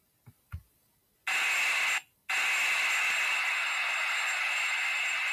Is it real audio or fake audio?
real